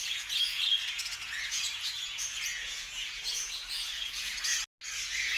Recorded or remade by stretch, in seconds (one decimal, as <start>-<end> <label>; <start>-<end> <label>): 0.0-4.5 remade; 4.5-5.4 recorded